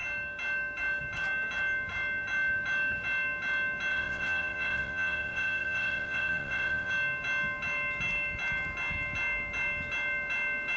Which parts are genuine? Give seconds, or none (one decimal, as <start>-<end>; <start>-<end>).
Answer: 0.0-3.9; 6.9-10.8